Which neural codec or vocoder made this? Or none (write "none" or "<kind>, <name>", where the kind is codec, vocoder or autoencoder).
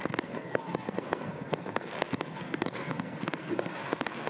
codec, SNAC